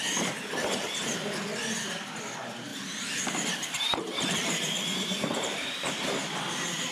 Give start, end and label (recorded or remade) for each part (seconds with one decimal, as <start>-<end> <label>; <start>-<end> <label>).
0.0-3.6 recorded; 3.6-6.4 remade; 6.4-6.9 recorded